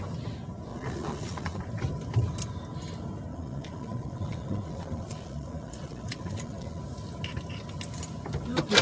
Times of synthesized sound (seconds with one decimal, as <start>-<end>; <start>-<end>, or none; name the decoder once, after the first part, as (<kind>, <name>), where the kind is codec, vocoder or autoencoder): 0.7-1.6 (vocoder, Vocos); 3.3-6.8